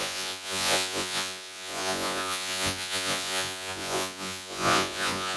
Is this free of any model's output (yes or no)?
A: no